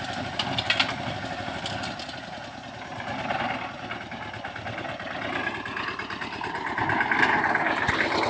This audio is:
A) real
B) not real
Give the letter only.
A